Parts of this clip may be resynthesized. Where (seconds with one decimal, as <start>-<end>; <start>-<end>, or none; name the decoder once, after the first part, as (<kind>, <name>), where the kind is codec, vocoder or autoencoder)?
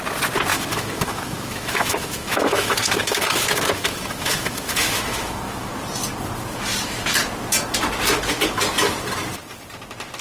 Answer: 0.5-5.7 (autoencoder, DAC-VAE)